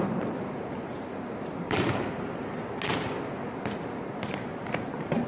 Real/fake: real